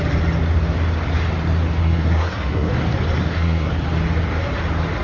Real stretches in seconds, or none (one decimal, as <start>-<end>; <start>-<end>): 0.0-1.8; 2.7-3.2; 3.7-5.0